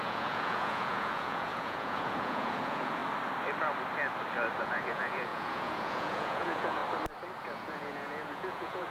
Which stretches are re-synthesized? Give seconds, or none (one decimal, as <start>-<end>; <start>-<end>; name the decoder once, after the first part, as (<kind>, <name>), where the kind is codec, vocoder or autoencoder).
0.0-3.0 (vocoder, Vocos); 4.6-6.8; 7.4-8.9